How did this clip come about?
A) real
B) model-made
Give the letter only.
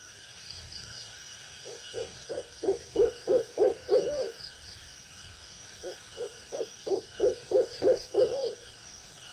B